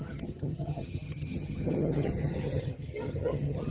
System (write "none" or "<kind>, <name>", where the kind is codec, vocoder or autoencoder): vocoder, HiFi-GAN